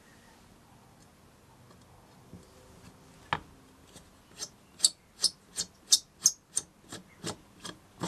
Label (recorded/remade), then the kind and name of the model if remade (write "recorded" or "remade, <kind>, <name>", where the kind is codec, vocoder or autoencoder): recorded